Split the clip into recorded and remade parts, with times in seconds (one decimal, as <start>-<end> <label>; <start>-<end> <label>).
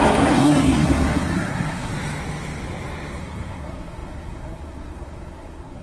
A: 0.0-1.9 remade; 1.9-3.2 recorded; 3.2-5.8 remade